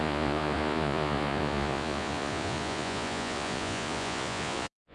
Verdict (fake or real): fake